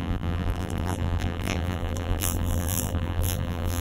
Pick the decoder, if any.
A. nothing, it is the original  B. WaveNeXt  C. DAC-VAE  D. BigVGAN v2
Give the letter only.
D